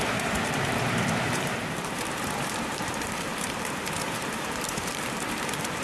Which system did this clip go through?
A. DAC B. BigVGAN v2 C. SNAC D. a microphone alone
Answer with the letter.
B